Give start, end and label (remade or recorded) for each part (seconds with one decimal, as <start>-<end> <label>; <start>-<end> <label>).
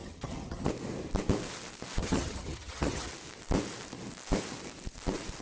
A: 0.0-0.7 remade; 0.7-2.0 recorded; 2.0-3.1 remade; 3.1-5.4 recorded